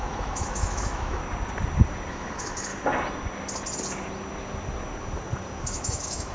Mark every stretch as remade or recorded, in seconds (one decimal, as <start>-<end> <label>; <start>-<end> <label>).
0.0-1.2 remade; 1.2-2.1 recorded; 2.1-2.7 remade; 2.7-5.6 recorded; 5.6-6.3 remade